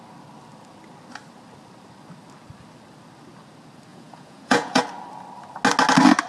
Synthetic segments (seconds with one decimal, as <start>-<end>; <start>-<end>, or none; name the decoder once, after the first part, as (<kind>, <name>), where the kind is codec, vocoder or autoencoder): 3.9-4.8 (vocoder, Vocos)